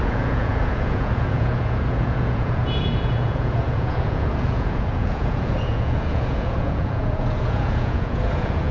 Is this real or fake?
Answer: fake